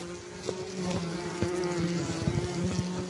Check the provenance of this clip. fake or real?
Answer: real